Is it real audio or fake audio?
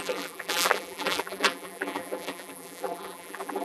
fake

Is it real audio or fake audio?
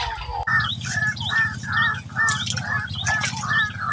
real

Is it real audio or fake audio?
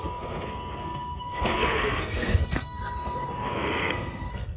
fake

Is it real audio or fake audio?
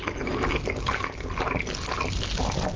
real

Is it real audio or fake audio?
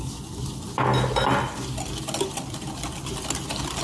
real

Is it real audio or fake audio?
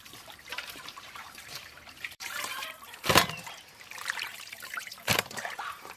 fake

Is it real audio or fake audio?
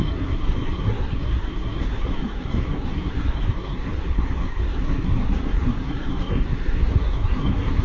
fake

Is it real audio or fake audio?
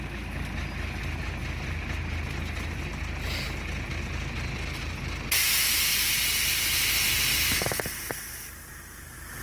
real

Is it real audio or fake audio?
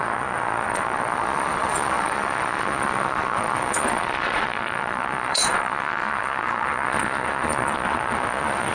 fake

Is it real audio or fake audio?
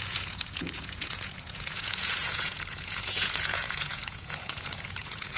fake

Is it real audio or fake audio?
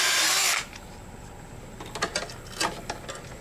real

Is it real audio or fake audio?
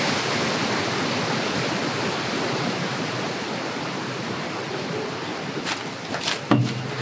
real